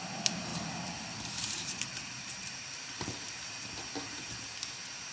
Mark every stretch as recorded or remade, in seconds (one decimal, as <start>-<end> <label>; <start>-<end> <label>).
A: 0.0-0.5 recorded; 0.5-3.1 remade; 3.1-5.1 recorded